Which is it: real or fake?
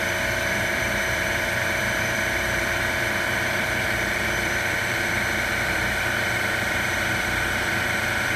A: fake